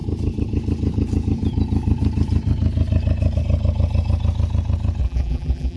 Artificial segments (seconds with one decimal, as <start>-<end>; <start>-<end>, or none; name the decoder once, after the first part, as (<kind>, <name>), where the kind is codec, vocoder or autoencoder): 5.0-5.8 (vocoder, BigVGAN v2)